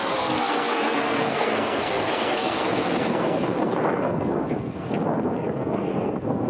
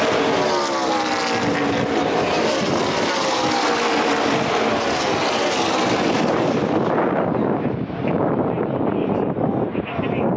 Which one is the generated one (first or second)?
first